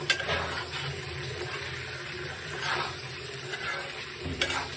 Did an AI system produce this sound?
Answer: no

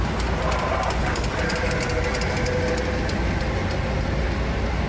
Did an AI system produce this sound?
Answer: no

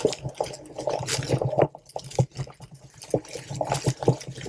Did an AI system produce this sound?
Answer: no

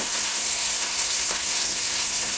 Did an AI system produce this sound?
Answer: yes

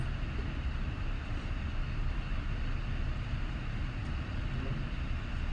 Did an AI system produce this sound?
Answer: no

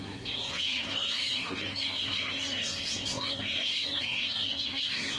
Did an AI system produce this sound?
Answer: yes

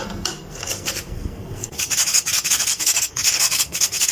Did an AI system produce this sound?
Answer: yes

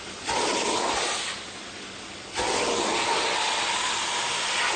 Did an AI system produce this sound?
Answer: no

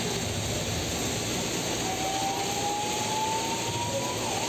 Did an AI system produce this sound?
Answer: no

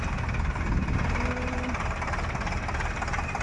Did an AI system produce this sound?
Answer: no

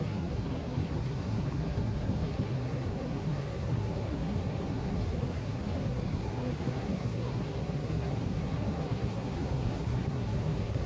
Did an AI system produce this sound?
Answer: yes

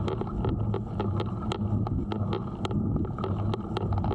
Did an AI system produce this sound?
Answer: no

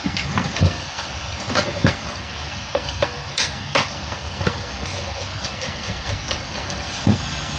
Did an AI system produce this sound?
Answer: yes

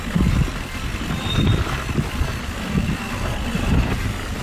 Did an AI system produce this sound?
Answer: no